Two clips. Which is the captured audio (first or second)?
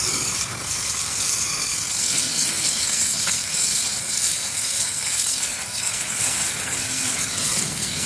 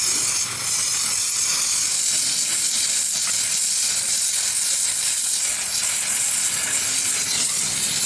second